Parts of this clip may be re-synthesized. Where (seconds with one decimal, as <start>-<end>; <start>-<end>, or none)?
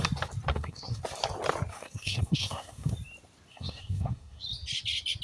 0.5-1.0; 1.7-2.9; 3.5-4.4